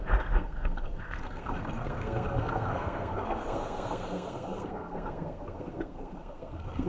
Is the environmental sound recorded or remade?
remade